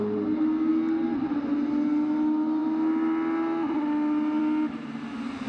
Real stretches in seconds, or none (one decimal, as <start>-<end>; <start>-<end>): 0.0-5.5